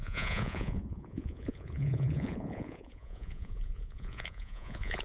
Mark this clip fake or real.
fake